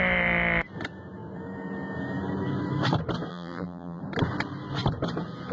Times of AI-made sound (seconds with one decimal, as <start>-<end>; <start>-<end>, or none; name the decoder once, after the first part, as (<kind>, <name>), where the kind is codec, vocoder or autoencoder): 3.3-4.0 (vocoder, BigVGAN v2)